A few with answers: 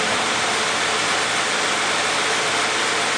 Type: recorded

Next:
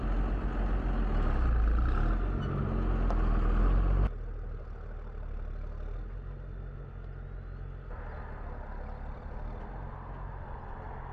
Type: recorded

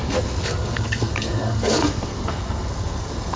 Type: remade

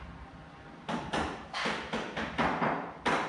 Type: remade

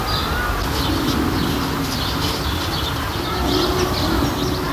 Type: recorded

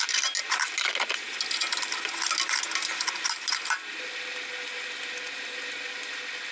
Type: recorded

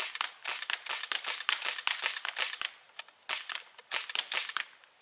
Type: recorded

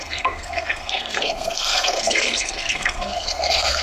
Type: remade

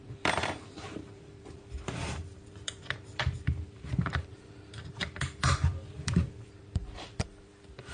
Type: remade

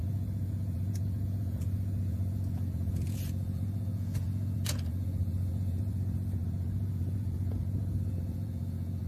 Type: remade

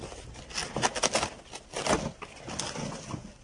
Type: recorded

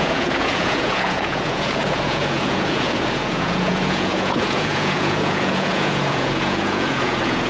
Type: remade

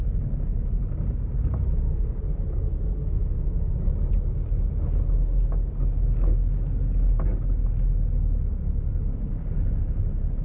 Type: recorded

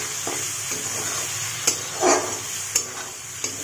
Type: recorded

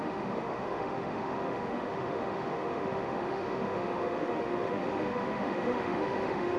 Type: remade